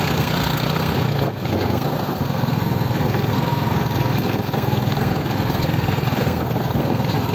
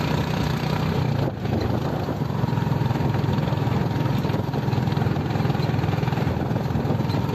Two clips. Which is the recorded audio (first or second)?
second